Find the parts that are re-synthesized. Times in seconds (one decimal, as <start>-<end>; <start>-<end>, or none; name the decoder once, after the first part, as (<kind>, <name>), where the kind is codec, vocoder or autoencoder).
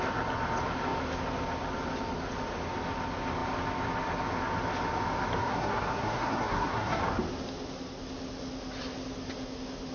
5.4-7.0 (codec, SNAC)